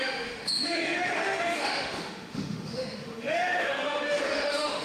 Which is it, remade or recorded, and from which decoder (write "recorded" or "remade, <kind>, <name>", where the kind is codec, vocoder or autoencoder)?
remade, autoencoder, DAC-VAE